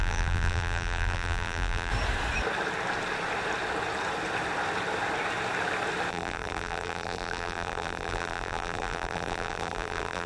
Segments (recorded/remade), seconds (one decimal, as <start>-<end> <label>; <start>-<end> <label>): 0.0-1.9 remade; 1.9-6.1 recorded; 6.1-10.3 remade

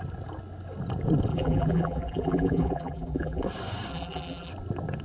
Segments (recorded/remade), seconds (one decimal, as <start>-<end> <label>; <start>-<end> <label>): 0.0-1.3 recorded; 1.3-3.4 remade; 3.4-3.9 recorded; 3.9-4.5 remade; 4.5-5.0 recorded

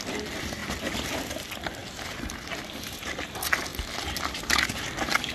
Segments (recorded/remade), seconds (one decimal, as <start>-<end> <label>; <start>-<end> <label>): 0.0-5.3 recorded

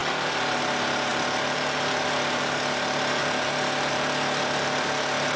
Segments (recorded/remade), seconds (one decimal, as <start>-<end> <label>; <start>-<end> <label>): 0.0-1.1 recorded; 1.1-2.4 remade; 2.4-5.4 recorded